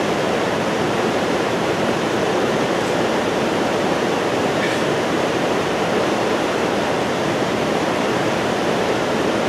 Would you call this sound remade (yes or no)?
yes